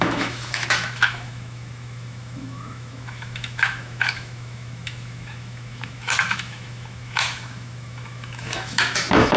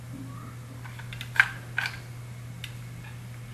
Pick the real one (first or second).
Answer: second